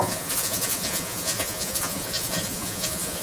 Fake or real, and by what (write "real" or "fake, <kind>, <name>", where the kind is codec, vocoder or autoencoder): fake, vocoder, Vocos